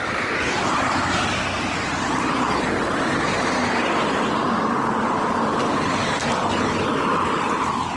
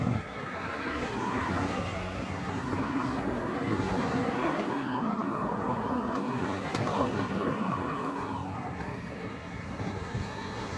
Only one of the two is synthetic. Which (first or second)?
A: second